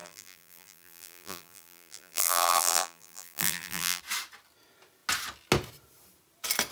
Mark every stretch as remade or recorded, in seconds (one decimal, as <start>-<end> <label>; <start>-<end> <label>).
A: 0.0-4.0 remade; 4.0-6.7 recorded